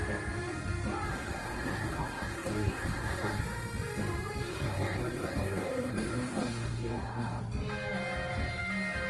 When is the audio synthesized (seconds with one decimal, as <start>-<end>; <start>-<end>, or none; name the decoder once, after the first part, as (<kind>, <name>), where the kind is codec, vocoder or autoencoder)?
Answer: 1.1-3.4 (codec, SNAC); 4.5-7.4